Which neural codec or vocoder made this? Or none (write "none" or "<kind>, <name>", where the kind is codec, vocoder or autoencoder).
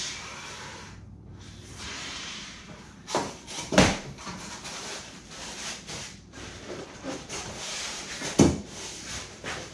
vocoder, BigVGAN v2